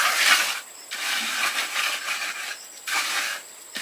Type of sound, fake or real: real